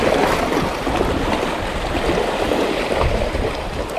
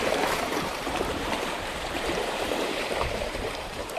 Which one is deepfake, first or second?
second